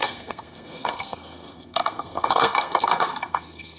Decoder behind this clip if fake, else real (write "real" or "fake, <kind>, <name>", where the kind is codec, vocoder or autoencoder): fake, codec, SNAC